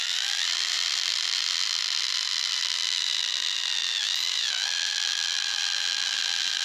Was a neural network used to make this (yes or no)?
yes